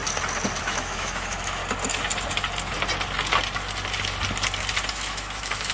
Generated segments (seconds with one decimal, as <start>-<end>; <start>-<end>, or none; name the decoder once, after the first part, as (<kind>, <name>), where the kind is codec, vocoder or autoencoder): 0.6-1.6 (autoencoder, DAC-VAE); 4.9-5.7